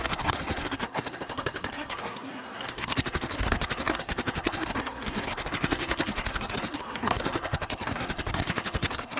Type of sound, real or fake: fake